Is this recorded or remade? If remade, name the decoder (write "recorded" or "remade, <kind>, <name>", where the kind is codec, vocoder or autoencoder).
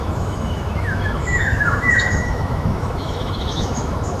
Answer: remade, autoencoder, DAC-VAE